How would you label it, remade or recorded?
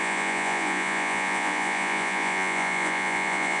remade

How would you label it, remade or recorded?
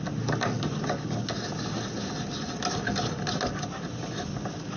recorded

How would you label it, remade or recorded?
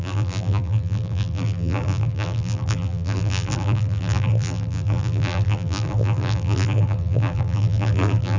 remade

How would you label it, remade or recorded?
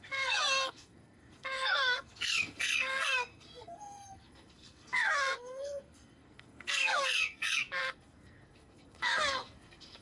remade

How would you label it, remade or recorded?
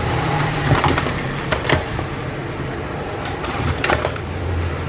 remade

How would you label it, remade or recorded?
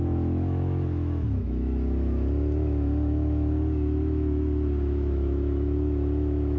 remade